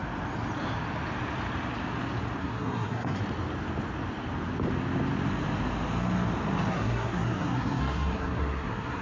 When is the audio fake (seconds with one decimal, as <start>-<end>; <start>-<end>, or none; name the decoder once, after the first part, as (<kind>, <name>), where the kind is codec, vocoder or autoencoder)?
2.4-3.2 (codec, SNAC); 6.7-9.0